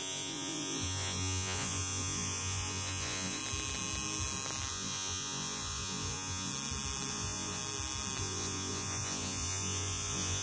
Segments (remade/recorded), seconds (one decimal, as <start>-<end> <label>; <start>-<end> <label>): 0.0-3.4 remade; 3.4-4.7 recorded; 4.7-6.5 remade; 6.5-7.1 recorded; 7.1-7.6 remade; 7.6-8.2 recorded; 8.2-10.4 remade